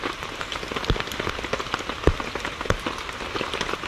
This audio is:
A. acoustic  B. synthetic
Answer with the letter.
A